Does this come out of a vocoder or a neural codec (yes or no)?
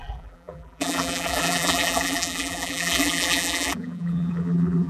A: yes